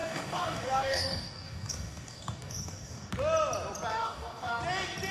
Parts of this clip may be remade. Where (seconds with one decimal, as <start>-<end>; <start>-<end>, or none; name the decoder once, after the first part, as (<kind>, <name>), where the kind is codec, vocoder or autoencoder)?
0.0-3.1 (codec, DAC); 3.9-4.6